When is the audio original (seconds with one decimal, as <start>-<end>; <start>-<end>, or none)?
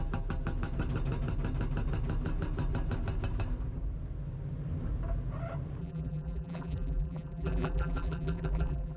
0.0-5.8